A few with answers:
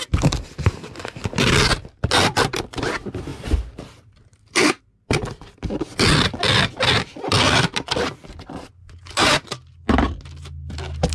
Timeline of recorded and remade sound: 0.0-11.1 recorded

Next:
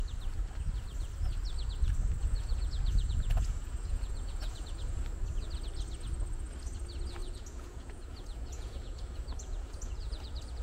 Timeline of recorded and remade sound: 0.0-2.2 recorded; 2.2-5.0 remade; 5.0-7.2 recorded; 7.2-10.6 remade

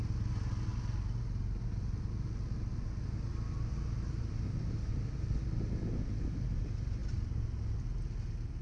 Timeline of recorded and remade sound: 0.0-8.6 recorded